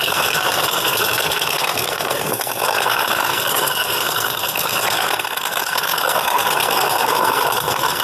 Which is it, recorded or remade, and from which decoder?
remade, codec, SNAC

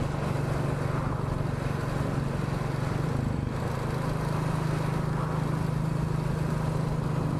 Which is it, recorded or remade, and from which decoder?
recorded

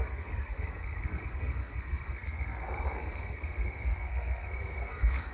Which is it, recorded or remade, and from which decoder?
remade, codec, SNAC